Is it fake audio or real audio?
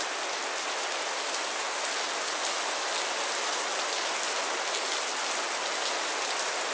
real